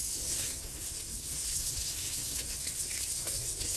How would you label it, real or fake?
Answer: fake